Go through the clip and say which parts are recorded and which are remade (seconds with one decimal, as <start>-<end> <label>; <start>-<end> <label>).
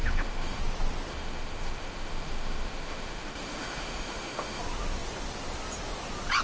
0.0-0.6 remade; 0.6-1.1 recorded; 1.1-4.6 remade; 4.6-6.4 recorded